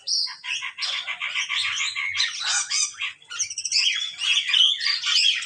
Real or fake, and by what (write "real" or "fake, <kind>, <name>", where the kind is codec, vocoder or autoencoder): fake, vocoder, Vocos